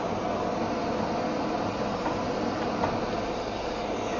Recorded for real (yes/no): yes